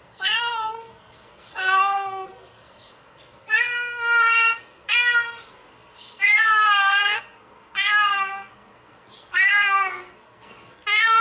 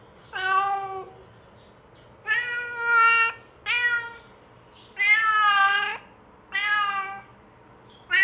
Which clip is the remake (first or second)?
first